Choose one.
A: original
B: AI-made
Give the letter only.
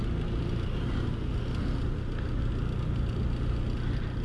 A